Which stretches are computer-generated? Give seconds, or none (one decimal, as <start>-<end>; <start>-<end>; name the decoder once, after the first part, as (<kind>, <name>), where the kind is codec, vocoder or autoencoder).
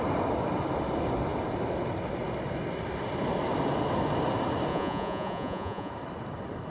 4.7-5.9 (vocoder, Vocos)